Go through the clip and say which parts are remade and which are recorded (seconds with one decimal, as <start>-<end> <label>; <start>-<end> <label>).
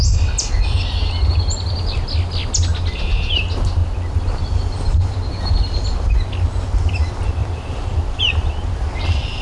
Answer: 0.0-9.4 recorded